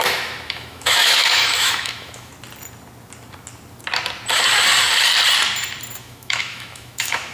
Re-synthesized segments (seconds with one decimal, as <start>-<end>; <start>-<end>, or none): 0.0-2.3; 6.0-7.3